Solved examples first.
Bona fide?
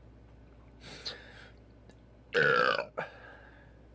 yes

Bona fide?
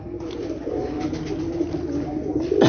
yes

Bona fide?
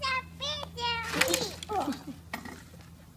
yes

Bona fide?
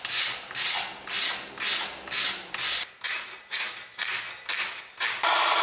yes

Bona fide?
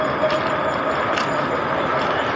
yes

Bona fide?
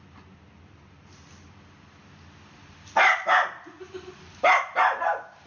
yes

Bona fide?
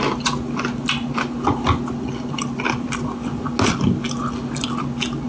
yes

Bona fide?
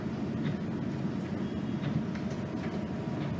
yes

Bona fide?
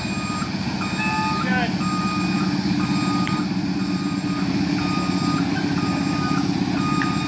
yes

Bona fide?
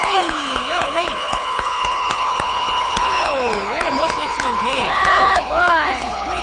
no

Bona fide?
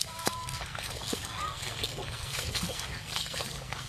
no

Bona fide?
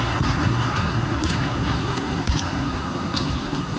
no